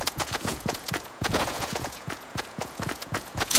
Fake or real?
fake